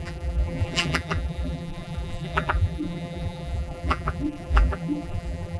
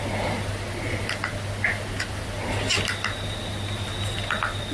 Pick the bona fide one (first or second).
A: second